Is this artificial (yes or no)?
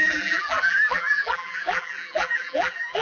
yes